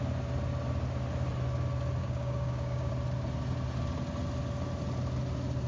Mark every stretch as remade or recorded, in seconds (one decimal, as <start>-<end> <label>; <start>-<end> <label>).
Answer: 0.0-2.0 recorded; 2.0-2.9 remade; 2.9-5.7 recorded